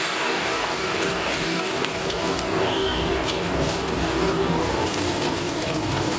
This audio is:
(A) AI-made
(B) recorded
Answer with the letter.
A